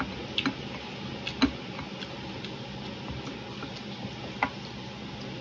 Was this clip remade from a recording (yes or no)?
no